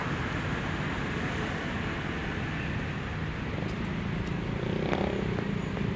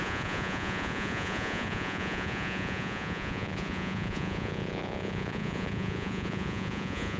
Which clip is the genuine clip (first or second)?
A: first